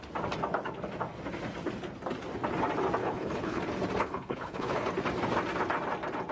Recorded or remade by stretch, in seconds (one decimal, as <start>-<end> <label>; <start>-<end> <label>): 0.0-3.0 recorded; 3.0-3.6 remade; 3.6-4.0 recorded; 4.0-4.9 remade; 4.9-6.3 recorded